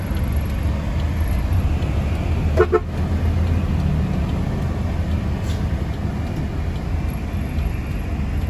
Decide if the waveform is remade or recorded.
recorded